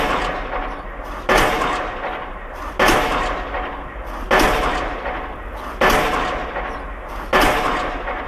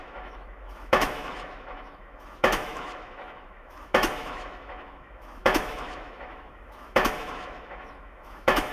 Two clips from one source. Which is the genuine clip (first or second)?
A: first